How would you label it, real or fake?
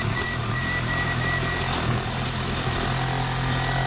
real